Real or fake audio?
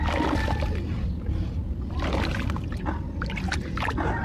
real